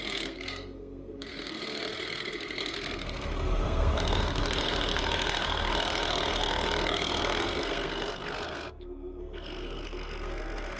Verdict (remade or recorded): remade